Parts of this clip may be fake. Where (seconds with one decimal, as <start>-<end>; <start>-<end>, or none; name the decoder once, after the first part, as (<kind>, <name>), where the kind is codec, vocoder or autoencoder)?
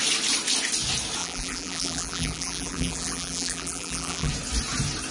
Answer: 1.2-4.3 (vocoder, BigVGAN v2)